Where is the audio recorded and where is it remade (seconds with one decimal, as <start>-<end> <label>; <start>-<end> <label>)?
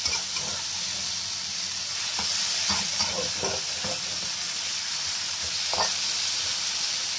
0.0-7.2 recorded